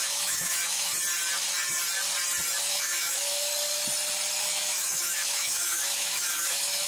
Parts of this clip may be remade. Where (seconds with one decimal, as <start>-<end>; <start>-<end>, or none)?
0.0-0.9; 2.7-3.5; 4.4-6.9